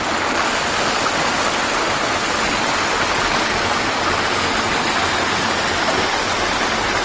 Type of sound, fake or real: real